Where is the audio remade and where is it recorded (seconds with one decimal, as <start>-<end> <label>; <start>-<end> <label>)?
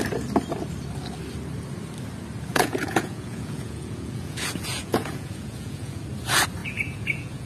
0.0-2.5 recorded; 2.5-6.0 remade; 6.0-6.6 recorded; 6.6-7.5 remade